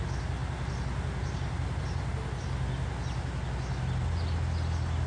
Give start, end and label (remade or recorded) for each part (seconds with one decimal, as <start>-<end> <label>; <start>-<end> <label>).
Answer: 0.0-5.1 recorded